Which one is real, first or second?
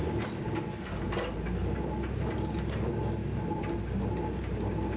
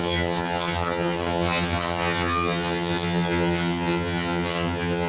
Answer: first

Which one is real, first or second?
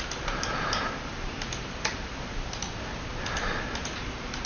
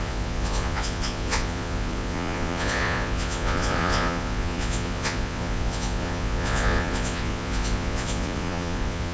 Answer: first